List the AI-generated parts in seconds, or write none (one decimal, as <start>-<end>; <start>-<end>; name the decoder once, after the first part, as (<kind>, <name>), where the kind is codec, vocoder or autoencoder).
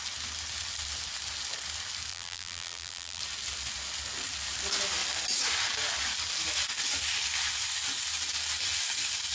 2.1-3.2 (vocoder, BigVGAN v2)